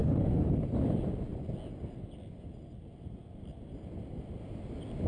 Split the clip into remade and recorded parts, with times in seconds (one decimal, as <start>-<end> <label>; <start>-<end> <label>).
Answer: 0.0-0.5 remade; 0.5-5.1 recorded